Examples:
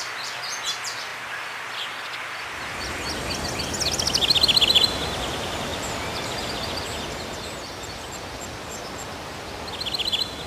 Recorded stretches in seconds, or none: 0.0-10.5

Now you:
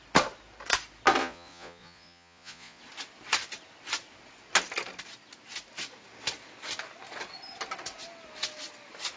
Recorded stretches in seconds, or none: 0.0-1.2; 2.8-9.2

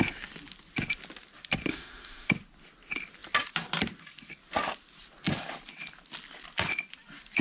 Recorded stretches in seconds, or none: 0.0-1.7; 2.3-7.4

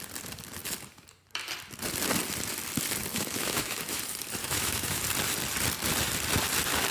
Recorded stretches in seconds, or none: 0.0-3.1; 4.0-4.4; 5.0-6.9

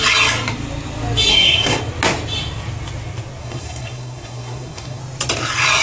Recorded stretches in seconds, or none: 0.0-1.3; 1.8-3.4; 5.0-5.8

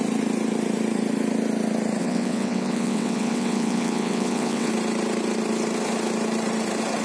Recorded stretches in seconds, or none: 0.0-2.0; 4.7-7.0

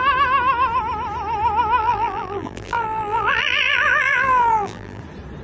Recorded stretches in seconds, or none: 0.0-1.8; 5.0-5.4